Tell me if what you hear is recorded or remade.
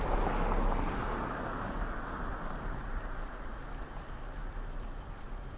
recorded